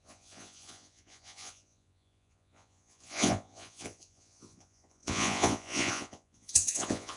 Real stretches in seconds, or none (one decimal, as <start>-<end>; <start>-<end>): none